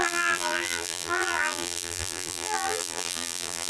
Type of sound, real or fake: fake